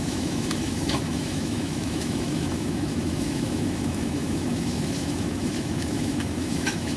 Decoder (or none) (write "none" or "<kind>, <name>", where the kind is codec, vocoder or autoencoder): autoencoder, DAC-VAE